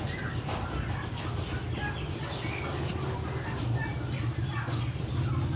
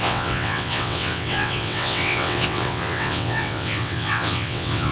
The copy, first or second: second